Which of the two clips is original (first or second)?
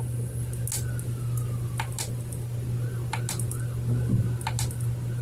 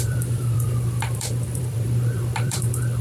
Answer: first